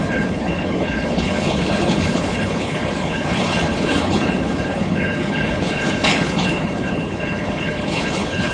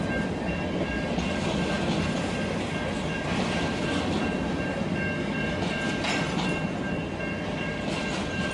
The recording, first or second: second